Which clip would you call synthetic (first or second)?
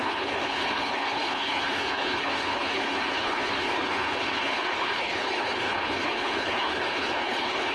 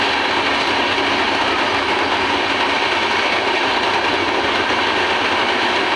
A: first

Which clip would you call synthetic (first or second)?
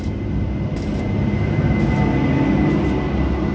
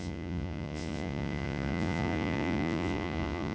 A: second